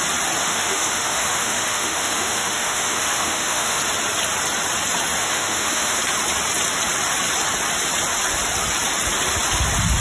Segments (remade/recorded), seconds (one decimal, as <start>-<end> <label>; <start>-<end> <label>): 0.0-0.4 recorded; 0.4-3.8 remade; 3.8-5.2 recorded; 5.2-6.0 remade; 6.0-10.0 recorded